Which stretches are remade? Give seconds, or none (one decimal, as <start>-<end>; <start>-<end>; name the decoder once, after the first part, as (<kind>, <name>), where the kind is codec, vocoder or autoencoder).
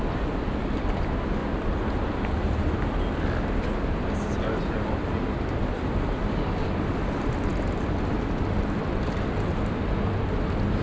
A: 1.4-3.1 (vocoder, BigVGAN v2)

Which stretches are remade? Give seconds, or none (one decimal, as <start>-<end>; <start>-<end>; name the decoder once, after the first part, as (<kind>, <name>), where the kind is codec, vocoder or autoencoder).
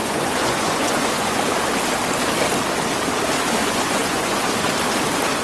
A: 0.0-1.4 (vocoder, Vocos); 3.6-4.5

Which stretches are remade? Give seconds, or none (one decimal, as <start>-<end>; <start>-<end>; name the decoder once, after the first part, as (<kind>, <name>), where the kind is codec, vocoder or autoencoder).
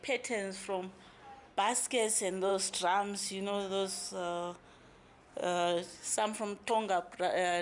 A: none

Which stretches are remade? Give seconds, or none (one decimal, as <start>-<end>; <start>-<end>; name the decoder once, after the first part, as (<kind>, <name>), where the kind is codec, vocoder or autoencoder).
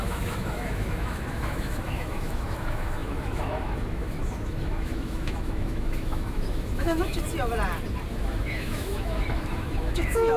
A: 0.0-7.1 (autoencoder, DAC-VAE); 8.1-10.4